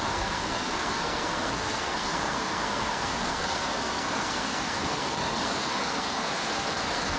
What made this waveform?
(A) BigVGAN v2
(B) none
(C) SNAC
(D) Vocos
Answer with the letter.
C